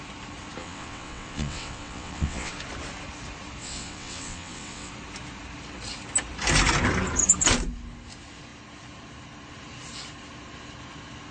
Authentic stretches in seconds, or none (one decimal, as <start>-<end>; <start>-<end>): 0.0-0.6; 2.5-3.6; 4.9-11.3